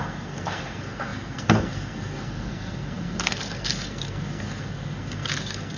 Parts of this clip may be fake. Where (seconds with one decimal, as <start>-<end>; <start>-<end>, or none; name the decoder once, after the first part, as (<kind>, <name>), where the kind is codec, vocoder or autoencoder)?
0.0-5.8 (codec, SNAC)